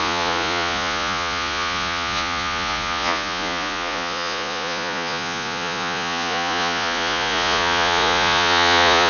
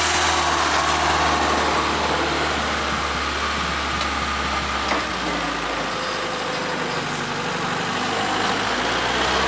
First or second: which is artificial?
first